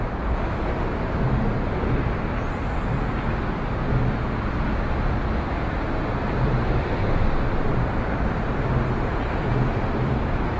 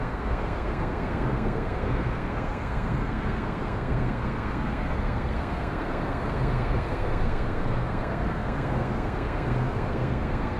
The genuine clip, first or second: first